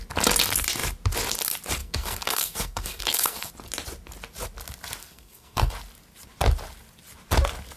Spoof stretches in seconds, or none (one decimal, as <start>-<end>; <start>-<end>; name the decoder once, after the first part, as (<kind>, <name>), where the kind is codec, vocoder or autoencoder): 1.8-3.5 (codec, SNAC); 5.0-5.7